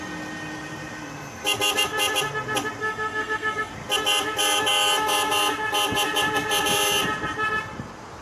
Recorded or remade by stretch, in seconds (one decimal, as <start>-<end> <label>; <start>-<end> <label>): 0.0-2.8 recorded; 2.8-3.7 remade; 3.7-8.2 recorded